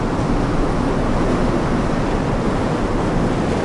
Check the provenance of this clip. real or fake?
real